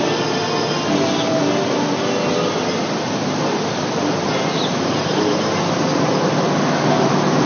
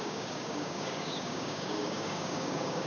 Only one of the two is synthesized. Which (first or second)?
second